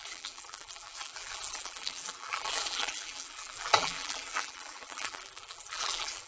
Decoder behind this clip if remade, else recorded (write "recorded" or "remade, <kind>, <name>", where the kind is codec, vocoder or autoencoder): remade, vocoder, BigVGAN v2